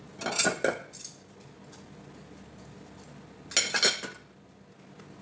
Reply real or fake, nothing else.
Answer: real